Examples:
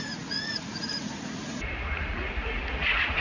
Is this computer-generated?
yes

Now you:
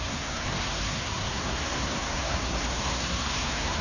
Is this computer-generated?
yes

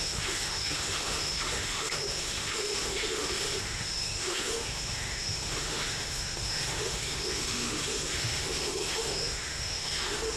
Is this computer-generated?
yes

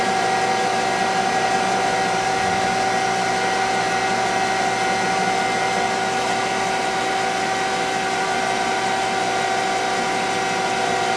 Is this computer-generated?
no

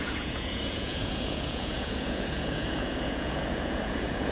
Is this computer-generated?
yes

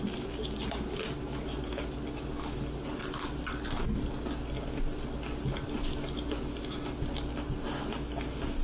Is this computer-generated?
no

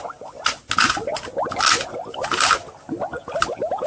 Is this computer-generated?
no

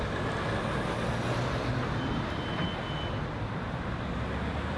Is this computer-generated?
no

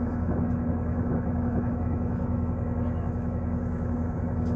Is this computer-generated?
yes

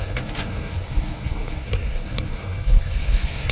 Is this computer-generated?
yes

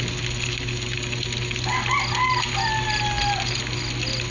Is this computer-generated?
no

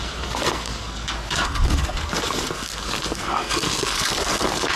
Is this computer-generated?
yes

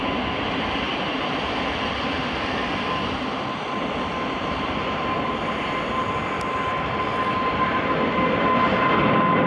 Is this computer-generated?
no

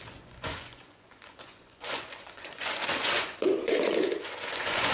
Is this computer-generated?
yes